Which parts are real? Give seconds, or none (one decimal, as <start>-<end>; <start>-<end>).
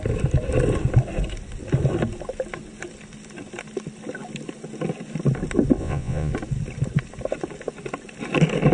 0.0-5.8; 6.3-8.7